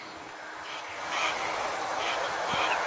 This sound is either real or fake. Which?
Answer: fake